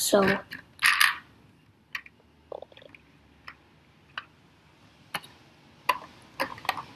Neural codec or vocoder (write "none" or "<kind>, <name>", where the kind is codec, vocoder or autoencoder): none